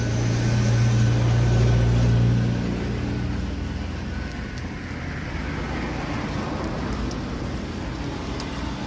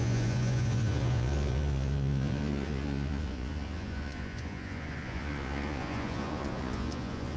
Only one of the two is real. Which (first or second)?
first